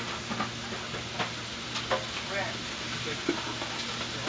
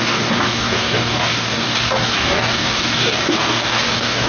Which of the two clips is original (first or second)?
first